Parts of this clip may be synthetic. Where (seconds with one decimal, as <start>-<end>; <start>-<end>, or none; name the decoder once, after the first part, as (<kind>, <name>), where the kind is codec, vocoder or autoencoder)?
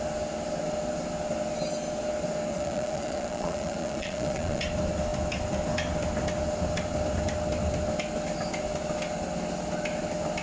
2.5-4.6 (vocoder, Vocos)